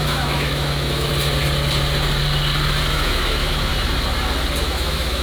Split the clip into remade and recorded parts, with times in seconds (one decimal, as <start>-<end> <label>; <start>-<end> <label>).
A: 0.0-1.1 remade; 1.1-2.9 recorded; 2.9-3.7 remade; 3.7-4.6 recorded; 4.6-5.2 remade